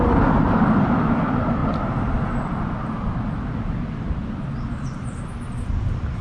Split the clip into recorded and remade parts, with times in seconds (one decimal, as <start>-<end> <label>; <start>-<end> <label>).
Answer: 0.0-6.2 remade